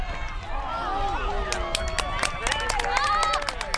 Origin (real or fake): real